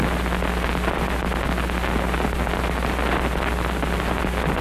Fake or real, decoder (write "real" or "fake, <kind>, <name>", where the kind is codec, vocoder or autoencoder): real